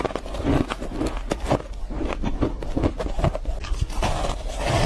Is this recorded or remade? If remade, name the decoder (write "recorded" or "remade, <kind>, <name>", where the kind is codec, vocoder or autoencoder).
remade, vocoder, BigVGAN v2